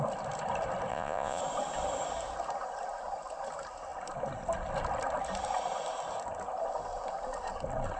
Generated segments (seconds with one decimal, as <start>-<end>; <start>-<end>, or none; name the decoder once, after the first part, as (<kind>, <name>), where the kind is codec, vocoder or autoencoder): 0.9-1.4 (vocoder, Vocos)